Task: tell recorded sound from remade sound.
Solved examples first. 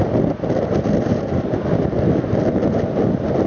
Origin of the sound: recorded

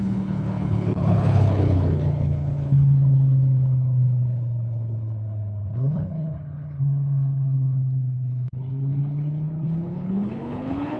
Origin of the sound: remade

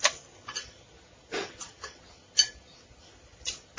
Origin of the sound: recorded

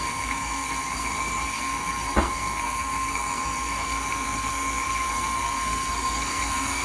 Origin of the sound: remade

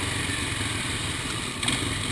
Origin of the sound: remade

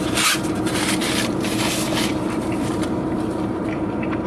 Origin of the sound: remade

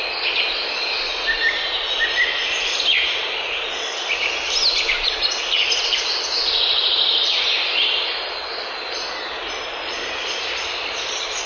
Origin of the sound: recorded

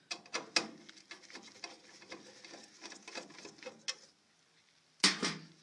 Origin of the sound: recorded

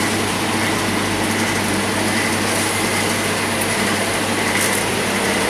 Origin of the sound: recorded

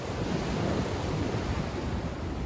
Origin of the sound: recorded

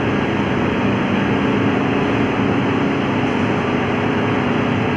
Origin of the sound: recorded